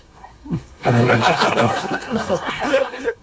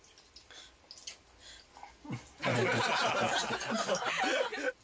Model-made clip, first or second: first